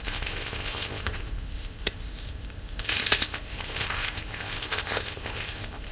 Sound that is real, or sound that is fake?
fake